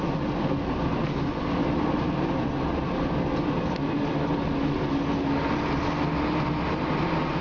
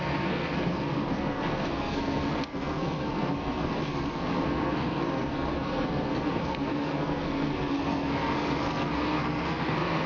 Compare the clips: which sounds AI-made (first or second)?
second